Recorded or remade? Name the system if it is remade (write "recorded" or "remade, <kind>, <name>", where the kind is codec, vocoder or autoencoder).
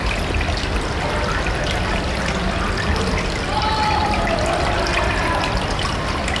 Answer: recorded